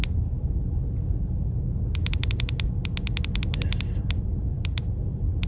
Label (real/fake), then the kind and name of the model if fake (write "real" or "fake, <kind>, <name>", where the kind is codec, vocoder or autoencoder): real